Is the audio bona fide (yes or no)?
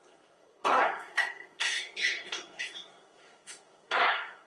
no